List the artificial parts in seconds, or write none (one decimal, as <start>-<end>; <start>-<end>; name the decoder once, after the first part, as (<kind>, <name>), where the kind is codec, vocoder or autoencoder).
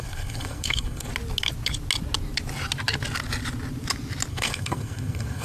0.0-1.1 (codec, SNAC); 4.3-5.4